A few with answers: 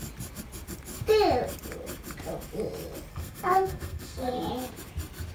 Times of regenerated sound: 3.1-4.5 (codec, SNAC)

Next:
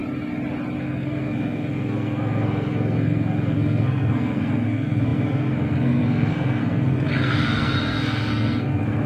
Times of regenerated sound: 0.8-9.1 (codec, SNAC)

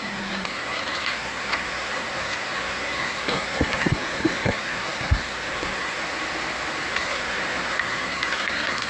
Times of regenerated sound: 0.0-6.0 (codec, SNAC); 6.9-8.9